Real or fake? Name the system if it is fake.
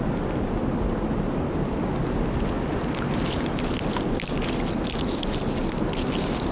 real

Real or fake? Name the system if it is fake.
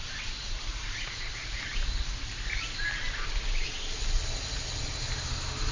real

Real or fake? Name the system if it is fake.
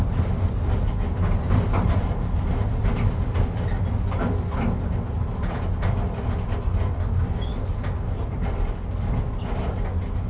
real